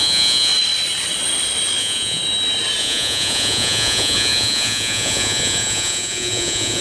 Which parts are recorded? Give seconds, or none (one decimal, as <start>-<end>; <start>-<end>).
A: 0.5-1.8; 2.2-2.8